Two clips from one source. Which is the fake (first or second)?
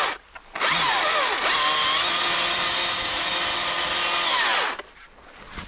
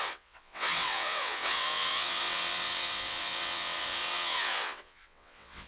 second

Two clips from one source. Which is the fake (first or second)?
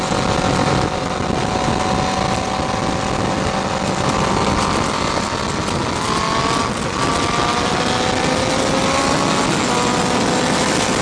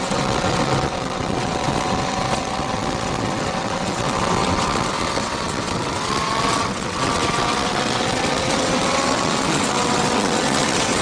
second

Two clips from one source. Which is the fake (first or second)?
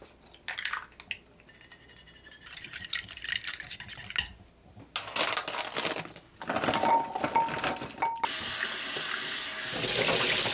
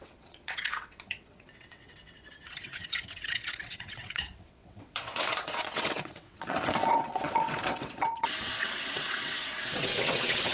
second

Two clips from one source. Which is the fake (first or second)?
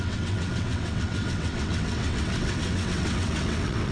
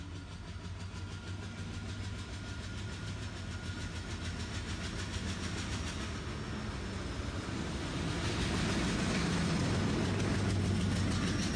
first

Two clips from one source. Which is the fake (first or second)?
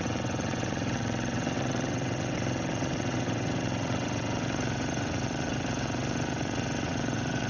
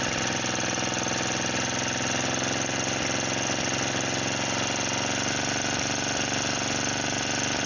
first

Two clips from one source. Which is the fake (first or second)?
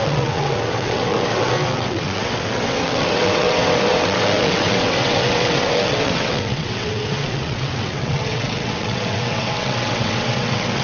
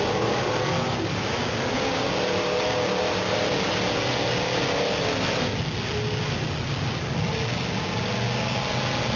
first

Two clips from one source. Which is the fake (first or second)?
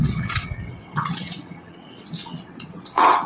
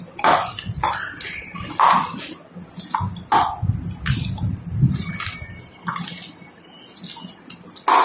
first